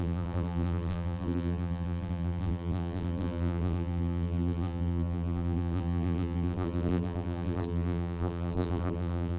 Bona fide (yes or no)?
no